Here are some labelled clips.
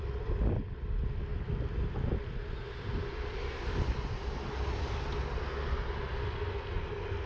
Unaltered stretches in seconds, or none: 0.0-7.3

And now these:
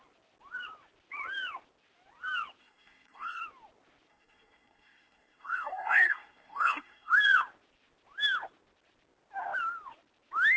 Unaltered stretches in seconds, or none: 0.0-2.6; 3.4-4.1; 7.1-10.6

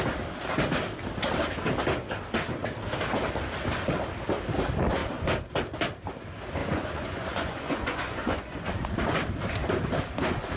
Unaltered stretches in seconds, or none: 0.0-6.6; 8.7-10.6